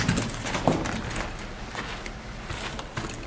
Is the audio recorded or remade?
recorded